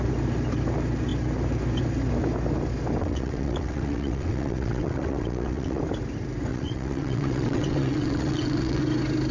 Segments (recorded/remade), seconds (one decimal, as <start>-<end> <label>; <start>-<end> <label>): 0.0-3.0 recorded; 3.0-5.8 remade; 5.8-6.5 recorded; 6.5-8.8 remade; 8.8-9.3 recorded